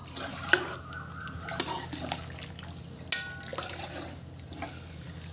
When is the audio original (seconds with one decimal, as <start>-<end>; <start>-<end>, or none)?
0.0-5.3